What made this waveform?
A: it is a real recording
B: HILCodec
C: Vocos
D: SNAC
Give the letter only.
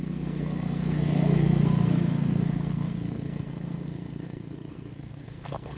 D